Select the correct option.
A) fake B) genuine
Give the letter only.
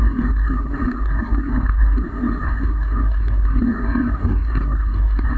A